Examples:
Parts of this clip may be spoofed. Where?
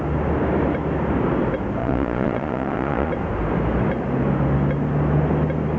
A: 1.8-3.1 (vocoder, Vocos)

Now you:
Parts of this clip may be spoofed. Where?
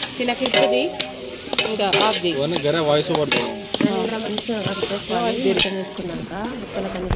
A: 4.1-5.1 (vocoder, Vocos); 5.6-6.6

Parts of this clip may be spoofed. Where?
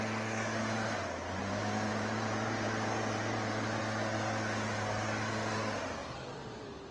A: 1.4-3.8 (vocoder, BigVGAN v2); 6.0-6.9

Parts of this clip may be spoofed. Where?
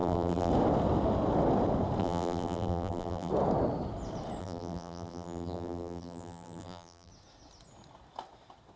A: 0.0-0.5 (vocoder, BigVGAN v2); 2.0-3.3; 4.4-7.1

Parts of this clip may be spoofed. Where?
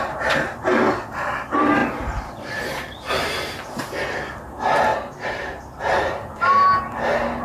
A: none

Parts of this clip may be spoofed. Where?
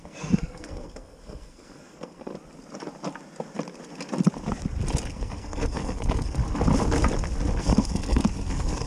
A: 0.0-2.3 (codec, SNAC); 5.1-6.4; 7.6-8.9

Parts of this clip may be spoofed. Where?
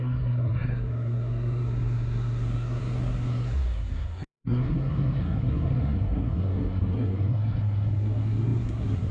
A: 0.0-9.1 (codec, SNAC)